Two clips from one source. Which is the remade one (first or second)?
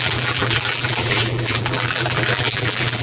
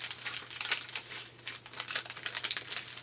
first